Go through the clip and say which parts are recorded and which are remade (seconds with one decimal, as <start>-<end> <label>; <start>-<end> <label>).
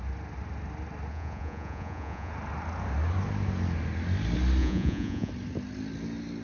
0.0-1.1 recorded; 1.1-2.3 remade; 2.3-4.6 recorded; 4.6-5.3 remade; 5.3-6.4 recorded